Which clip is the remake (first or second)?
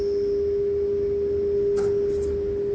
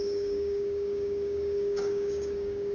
second